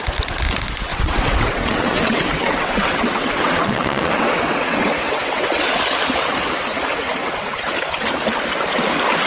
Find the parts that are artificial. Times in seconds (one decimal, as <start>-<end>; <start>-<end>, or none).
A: 0.9-5.7; 7.2-7.7